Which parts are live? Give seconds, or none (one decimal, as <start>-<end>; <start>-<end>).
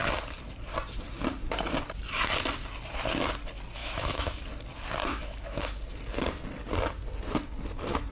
0.0-3.8; 4.4-5.0; 5.7-8.1